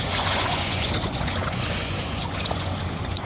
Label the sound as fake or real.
fake